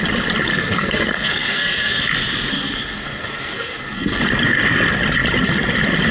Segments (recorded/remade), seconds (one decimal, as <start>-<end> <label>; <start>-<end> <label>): 0.0-0.5 recorded; 0.5-2.0 remade; 2.0-2.5 recorded; 2.5-4.2 remade; 4.2-6.1 recorded